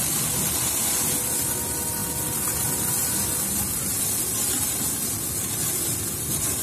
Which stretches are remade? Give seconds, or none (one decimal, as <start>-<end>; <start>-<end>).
none